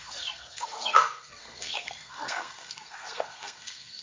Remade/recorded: remade